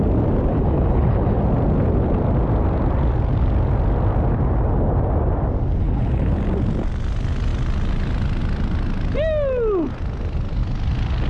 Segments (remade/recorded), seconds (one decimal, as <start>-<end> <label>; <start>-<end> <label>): 0.0-0.5 recorded; 0.5-1.4 remade; 1.4-5.8 recorded; 5.8-6.3 remade; 6.3-11.3 recorded